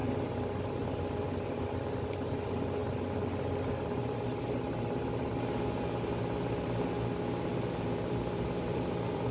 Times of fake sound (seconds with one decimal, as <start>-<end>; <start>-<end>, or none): 7.5-9.3